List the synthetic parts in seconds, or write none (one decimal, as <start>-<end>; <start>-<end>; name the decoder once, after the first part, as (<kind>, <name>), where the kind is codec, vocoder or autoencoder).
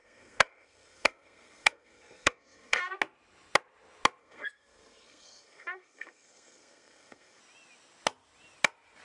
0.0-2.8 (codec, SNAC); 4.2-7.4